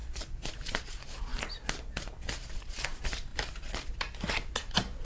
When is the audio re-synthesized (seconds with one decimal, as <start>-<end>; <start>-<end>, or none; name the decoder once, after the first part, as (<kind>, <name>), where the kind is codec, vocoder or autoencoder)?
0.5-1.3 (vocoder, BigVGAN v2); 2.7-5.0